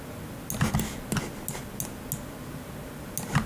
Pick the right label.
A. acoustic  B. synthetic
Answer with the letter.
A